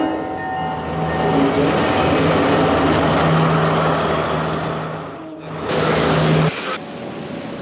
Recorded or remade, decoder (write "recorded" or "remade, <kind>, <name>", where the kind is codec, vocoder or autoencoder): recorded